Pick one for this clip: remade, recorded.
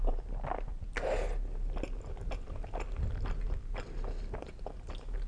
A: recorded